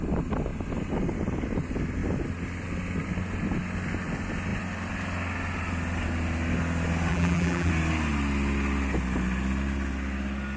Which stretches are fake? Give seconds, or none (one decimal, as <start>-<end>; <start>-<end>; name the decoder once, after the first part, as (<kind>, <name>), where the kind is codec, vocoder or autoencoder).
7.1-7.7 (vocoder, BigVGAN v2)